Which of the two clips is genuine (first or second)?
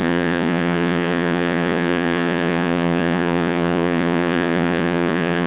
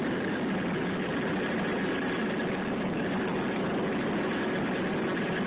second